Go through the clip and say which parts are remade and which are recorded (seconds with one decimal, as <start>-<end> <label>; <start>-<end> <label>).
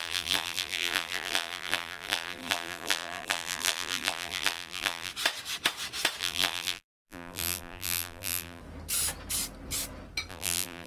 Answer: 0.0-5.1 remade; 5.1-6.2 recorded; 6.2-8.6 remade; 8.6-10.3 recorded; 10.3-10.9 remade